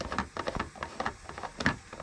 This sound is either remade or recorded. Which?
recorded